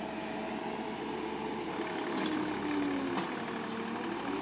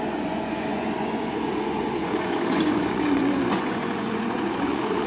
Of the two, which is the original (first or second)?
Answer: first